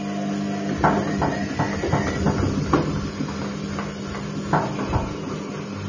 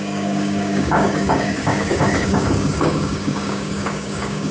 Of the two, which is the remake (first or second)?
second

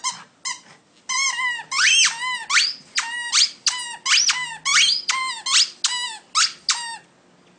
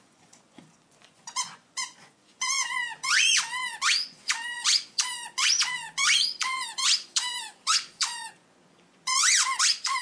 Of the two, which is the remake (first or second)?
second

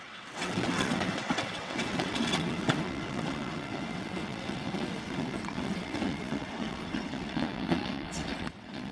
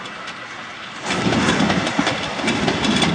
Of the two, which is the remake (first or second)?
first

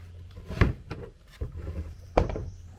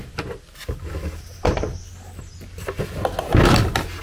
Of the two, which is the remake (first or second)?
first